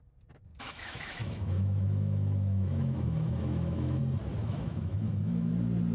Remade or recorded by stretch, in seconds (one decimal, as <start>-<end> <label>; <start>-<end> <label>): 0.0-0.5 recorded; 0.5-4.0 remade; 4.0-4.4 recorded; 4.4-5.5 remade; 5.5-5.9 recorded